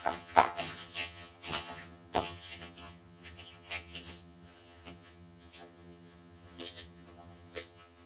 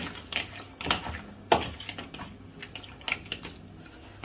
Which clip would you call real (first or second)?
second